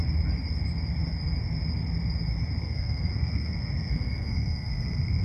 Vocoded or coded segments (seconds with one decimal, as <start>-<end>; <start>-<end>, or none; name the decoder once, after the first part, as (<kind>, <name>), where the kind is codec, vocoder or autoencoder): 2.6-5.2 (codec, SNAC)